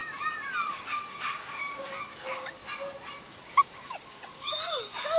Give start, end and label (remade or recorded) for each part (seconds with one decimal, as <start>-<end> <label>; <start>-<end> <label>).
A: 0.0-0.7 recorded; 0.7-2.6 remade; 2.6-3.2 recorded; 3.2-5.2 remade